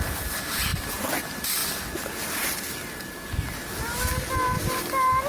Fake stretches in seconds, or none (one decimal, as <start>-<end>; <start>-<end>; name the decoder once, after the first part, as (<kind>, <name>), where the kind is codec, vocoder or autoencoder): none